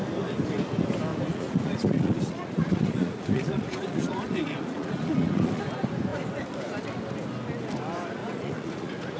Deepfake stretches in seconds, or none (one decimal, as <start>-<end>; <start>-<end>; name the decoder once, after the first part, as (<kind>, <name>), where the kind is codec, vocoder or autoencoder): 1.1-5.6 (vocoder, Vocos); 8.2-9.2